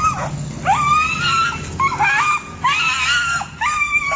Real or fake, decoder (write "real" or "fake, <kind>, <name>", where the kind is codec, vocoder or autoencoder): real